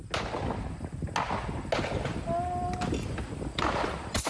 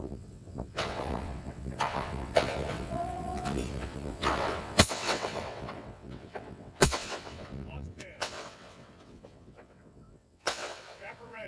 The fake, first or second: second